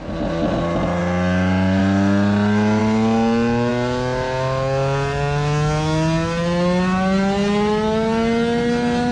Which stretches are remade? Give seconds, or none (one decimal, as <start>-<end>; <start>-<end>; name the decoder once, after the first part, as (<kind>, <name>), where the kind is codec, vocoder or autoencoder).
none